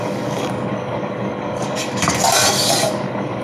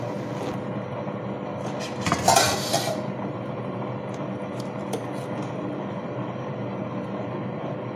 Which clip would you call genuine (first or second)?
second